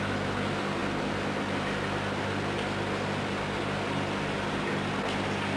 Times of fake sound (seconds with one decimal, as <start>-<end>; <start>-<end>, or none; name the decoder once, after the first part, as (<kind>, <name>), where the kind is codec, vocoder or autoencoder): none